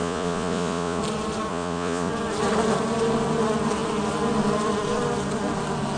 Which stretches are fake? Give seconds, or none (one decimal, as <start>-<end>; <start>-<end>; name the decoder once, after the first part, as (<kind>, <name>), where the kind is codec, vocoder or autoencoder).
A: 0.0-1.0 (vocoder, Vocos); 1.5-2.1